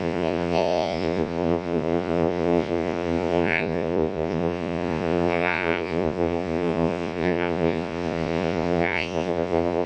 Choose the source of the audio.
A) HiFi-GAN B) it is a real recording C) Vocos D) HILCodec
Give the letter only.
C